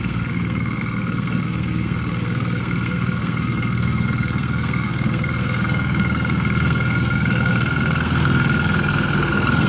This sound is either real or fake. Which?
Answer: fake